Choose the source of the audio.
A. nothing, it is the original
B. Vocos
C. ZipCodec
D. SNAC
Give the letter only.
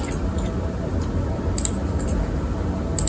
A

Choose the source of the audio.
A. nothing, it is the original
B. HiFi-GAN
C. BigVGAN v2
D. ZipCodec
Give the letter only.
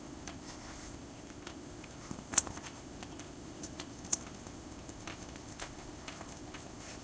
D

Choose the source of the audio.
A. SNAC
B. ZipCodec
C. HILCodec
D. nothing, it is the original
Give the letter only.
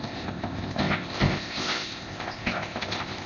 B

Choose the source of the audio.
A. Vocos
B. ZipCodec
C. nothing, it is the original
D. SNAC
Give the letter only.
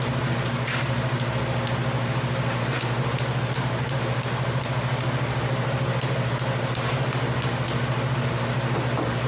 C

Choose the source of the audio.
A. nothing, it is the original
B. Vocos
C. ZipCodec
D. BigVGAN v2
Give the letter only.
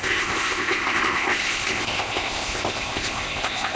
C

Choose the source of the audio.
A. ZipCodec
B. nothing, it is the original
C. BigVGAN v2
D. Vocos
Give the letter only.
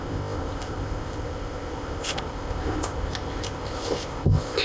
A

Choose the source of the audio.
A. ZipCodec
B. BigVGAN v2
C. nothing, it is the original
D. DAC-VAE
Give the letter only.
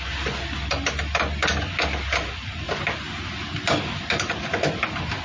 C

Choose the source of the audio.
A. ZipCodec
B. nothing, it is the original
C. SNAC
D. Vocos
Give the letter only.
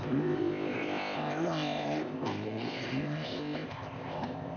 A